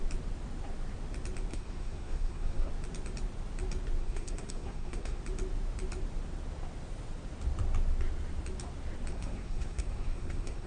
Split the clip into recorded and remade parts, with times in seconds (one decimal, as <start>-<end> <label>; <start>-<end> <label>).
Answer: 0.0-1.5 recorded; 1.5-2.7 remade; 2.7-4.0 recorded; 4.0-5.2 remade; 5.2-9.1 recorded; 9.1-10.7 remade